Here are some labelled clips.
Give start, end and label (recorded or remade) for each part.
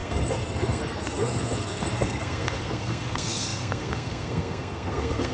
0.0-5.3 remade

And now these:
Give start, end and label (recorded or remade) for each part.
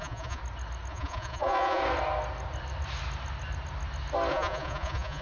0.0-0.4 remade; 0.4-0.9 recorded; 0.9-1.8 remade; 1.8-4.3 recorded; 4.3-5.2 remade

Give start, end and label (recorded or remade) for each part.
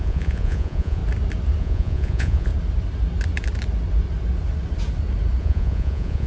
0.0-1.0 remade; 1.0-1.6 recorded; 1.6-2.5 remade; 2.5-5.4 recorded; 5.4-6.3 remade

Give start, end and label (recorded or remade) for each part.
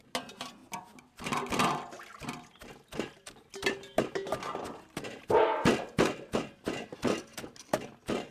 0.0-8.3 recorded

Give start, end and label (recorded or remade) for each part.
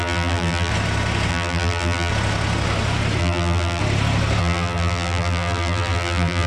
0.0-0.7 remade; 0.7-1.3 recorded; 1.3-2.1 remade; 2.1-3.2 recorded; 3.2-3.8 remade; 3.8-4.4 recorded; 4.4-6.5 remade